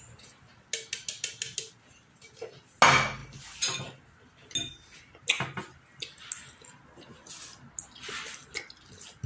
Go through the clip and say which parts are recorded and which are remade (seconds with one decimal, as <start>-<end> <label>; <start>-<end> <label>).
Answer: 0.0-9.3 recorded